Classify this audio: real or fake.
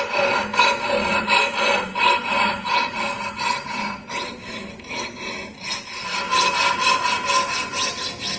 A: real